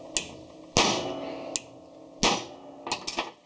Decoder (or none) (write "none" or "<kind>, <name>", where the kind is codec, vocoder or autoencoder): none